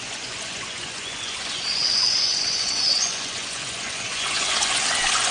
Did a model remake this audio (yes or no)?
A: yes